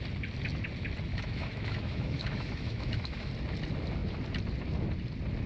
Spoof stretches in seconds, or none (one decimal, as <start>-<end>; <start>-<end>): 1.1-3.3